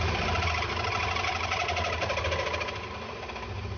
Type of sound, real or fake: real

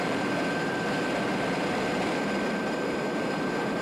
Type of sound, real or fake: fake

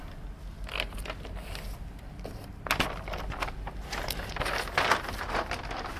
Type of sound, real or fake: real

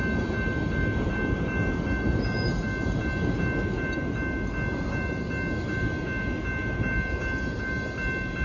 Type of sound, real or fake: real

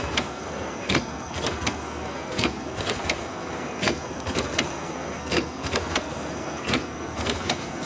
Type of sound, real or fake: fake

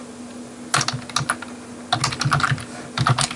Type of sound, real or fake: real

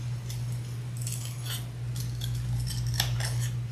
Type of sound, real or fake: real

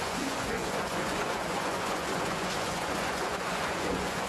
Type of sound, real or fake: fake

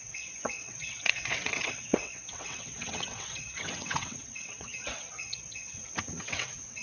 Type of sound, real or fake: fake